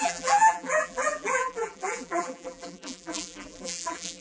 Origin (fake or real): fake